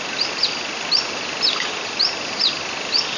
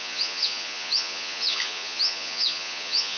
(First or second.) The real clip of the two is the first